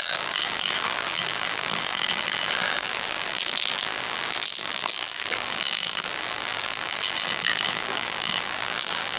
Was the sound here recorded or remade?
remade